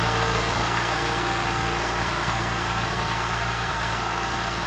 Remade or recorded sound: remade